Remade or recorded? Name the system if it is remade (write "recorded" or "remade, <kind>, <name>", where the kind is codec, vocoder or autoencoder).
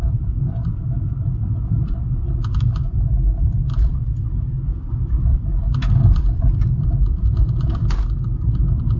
remade, vocoder, BigVGAN v2